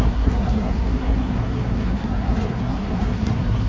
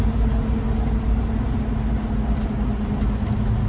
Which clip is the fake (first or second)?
first